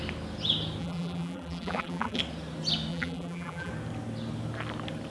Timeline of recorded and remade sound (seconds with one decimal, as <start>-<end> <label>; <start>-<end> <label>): 0.0-0.8 recorded; 0.8-2.2 remade; 2.2-2.9 recorded; 2.9-3.7 remade; 3.7-5.1 recorded